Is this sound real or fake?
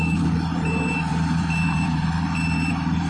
fake